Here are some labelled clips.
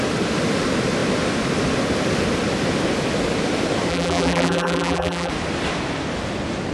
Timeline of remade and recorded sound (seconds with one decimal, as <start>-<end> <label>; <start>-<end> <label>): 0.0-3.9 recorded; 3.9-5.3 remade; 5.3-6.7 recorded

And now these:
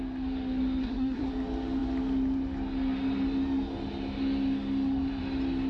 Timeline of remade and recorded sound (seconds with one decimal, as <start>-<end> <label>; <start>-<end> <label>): 0.0-0.8 recorded; 0.8-1.3 remade; 1.3-5.7 recorded

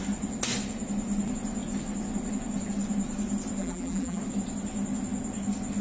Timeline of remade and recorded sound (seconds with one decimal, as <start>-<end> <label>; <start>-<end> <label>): 0.0-3.6 recorded; 3.6-4.2 remade; 4.2-5.8 recorded

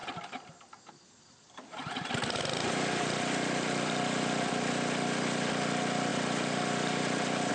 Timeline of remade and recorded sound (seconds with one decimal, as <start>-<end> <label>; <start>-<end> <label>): 0.0-4.5 remade; 4.5-6.1 recorded; 6.1-7.5 remade